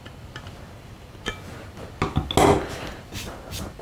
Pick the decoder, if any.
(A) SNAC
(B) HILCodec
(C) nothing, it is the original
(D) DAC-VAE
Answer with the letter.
C